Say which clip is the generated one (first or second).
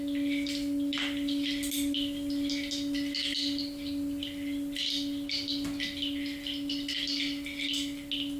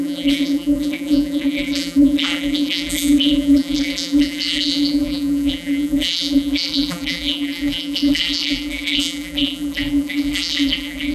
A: second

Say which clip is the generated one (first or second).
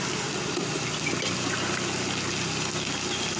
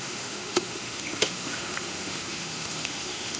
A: second